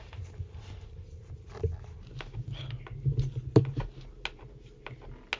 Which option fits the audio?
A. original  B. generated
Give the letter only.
A